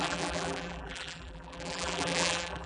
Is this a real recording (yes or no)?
no